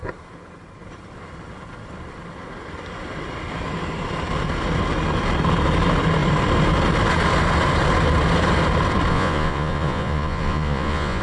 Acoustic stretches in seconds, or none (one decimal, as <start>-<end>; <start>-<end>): 0.0-9.1